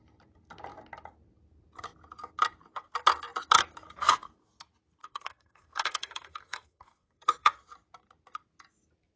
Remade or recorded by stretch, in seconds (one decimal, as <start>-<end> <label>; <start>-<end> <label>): 0.0-5.0 recorded; 5.0-7.6 remade; 7.6-9.2 recorded